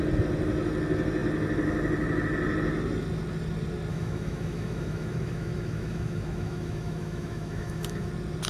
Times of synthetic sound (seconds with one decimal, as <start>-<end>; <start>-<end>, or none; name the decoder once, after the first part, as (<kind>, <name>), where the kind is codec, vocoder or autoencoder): 3.9-8.1 (autoencoder, DAC-VAE)